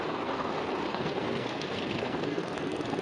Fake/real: fake